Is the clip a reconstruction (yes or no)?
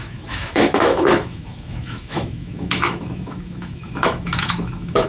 yes